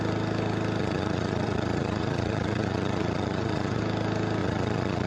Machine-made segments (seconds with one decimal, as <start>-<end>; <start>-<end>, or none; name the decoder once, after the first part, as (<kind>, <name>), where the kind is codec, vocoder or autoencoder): 0.8-3.8 (vocoder, Vocos); 4.4-5.1